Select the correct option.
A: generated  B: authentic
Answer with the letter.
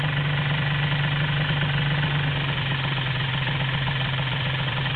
A